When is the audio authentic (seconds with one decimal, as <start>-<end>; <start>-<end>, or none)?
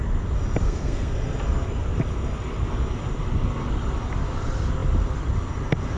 0.0-0.6; 1.1-6.0